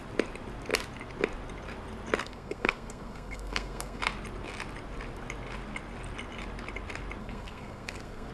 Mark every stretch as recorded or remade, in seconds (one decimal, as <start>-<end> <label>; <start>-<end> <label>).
0.0-2.2 recorded; 2.2-4.0 remade; 4.0-7.2 recorded; 7.2-8.3 remade